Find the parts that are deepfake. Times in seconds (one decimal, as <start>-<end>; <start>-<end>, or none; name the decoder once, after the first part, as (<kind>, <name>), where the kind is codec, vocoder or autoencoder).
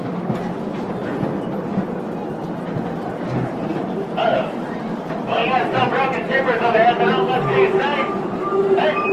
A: 3.7-4.8 (vocoder, BigVGAN v2)